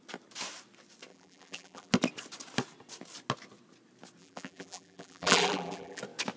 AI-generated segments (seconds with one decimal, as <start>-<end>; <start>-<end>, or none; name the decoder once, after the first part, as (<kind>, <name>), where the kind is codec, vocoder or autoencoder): 1.1-1.9 (vocoder, BigVGAN v2); 4.2-6.0